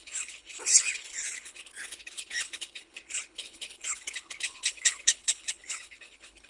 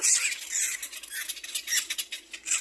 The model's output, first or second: first